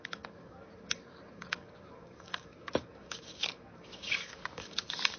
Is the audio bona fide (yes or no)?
no